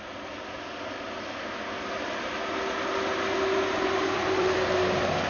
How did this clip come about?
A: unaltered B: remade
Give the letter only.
B